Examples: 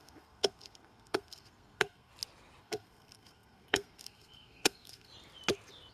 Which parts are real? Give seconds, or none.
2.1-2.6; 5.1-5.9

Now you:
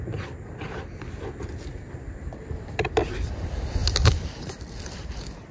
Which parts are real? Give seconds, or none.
0.0-3.8

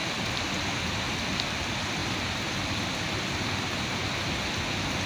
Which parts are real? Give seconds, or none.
0.0-5.1

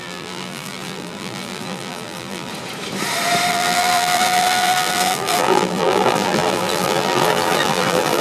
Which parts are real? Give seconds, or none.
2.5-3.5

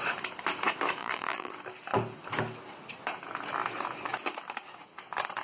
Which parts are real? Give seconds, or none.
0.0-1.0; 1.5-5.4